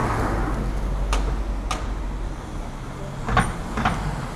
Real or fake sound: real